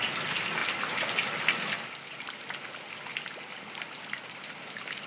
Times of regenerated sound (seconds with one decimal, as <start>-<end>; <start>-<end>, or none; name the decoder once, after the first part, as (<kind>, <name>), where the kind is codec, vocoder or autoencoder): none